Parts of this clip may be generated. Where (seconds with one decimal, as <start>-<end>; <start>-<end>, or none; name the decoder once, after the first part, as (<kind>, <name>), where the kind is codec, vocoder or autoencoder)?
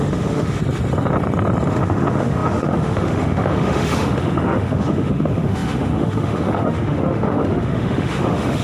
0.0-0.6 (autoencoder, DAC-VAE); 1.7-8.6